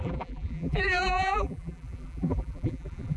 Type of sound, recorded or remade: remade